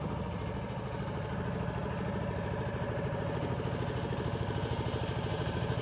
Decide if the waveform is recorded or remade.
recorded